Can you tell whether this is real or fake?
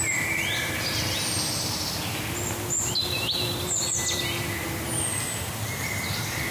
real